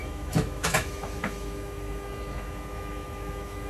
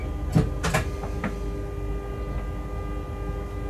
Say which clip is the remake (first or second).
first